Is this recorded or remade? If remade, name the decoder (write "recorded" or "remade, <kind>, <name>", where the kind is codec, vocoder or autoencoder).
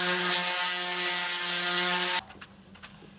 recorded